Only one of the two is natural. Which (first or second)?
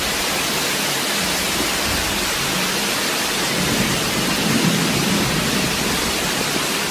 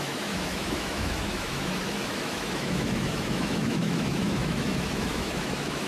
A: first